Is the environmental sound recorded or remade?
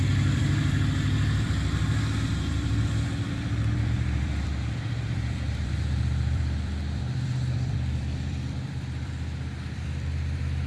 remade